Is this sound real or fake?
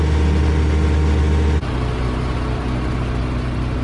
real